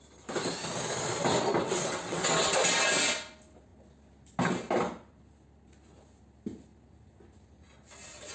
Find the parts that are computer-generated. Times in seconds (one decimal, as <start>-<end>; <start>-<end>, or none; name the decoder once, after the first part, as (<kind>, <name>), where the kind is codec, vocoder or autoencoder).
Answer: 1.6-2.5 (vocoder, WaveNeXt)